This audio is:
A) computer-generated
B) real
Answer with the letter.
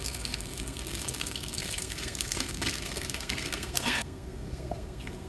A